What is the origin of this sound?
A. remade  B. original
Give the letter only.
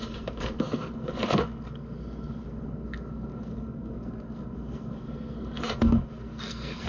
A